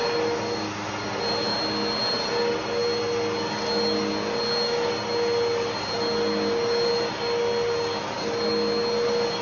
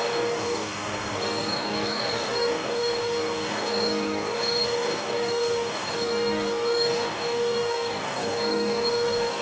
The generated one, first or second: second